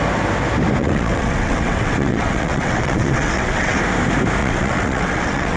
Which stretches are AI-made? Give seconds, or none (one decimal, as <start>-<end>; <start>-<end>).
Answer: 0.8-3.8; 4.4-5.6